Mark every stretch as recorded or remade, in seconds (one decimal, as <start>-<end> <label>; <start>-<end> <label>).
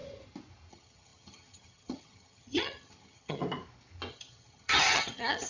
0.0-0.7 recorded; 0.7-3.4 remade; 3.4-4.1 recorded; 4.1-5.5 remade